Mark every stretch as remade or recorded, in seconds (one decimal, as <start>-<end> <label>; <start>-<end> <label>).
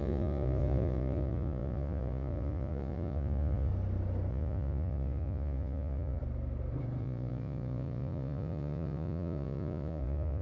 0.0-3.7 remade; 3.7-4.3 recorded; 4.3-6.2 remade; 6.2-7.0 recorded; 7.0-10.4 remade